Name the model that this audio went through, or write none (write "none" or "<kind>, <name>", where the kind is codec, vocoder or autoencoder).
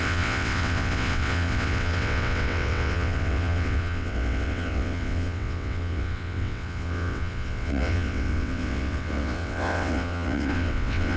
vocoder, WaveNeXt